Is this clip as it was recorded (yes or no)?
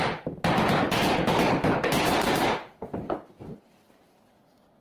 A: yes